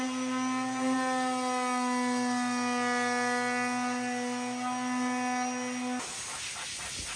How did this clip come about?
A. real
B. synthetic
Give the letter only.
A